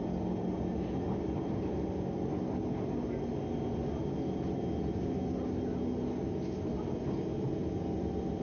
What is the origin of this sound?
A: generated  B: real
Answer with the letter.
B